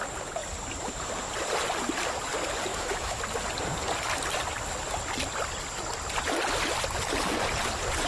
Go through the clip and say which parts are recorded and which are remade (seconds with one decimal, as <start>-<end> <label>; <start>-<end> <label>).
0.0-2.7 recorded; 2.7-3.2 remade; 3.2-8.1 recorded